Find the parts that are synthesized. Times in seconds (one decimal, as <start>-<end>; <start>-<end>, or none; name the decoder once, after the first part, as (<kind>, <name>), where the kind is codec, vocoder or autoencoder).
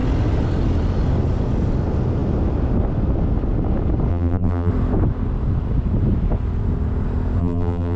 4.1-4.7 (vocoder, BigVGAN v2); 7.4-8.0